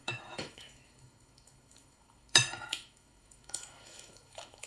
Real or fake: fake